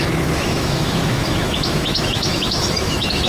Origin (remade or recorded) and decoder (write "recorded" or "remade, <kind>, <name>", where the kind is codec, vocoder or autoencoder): remade, autoencoder, DAC-VAE